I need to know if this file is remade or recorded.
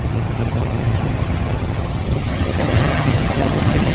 remade